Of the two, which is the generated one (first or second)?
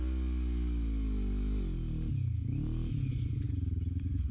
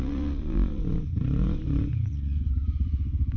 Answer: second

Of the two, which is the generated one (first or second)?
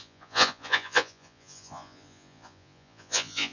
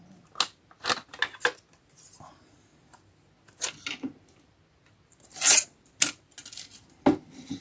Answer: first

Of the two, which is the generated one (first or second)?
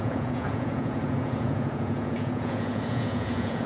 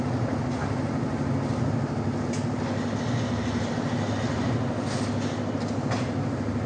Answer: first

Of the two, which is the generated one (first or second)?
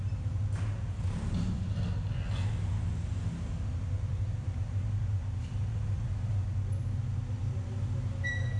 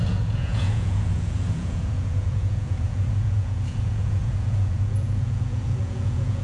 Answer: second